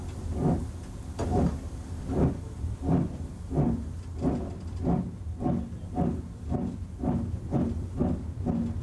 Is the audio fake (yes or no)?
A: no